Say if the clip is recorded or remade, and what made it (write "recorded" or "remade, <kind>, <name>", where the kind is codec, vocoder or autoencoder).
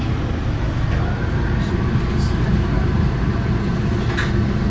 recorded